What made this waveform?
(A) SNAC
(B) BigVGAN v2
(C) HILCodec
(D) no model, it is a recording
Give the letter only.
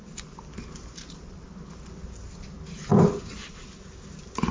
D